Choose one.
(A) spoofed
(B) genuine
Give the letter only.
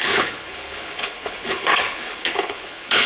A